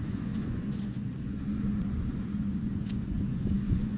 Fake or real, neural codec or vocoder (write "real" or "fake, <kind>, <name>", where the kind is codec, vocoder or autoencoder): fake, vocoder, Vocos